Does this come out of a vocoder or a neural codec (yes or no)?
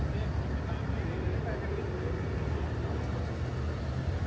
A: no